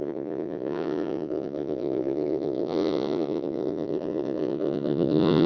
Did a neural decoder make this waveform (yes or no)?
yes